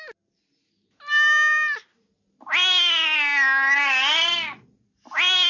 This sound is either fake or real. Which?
real